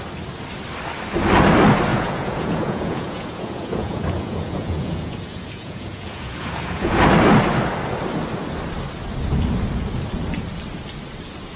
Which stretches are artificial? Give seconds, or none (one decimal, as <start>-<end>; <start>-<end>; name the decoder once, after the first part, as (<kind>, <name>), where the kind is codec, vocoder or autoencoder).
1.9-7.0 (vocoder, Vocos)